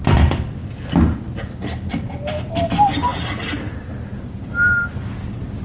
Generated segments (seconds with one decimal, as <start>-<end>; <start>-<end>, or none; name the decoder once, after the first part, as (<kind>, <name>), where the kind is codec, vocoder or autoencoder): 0.0-0.6 (vocoder, BigVGAN v2); 1.6-5.6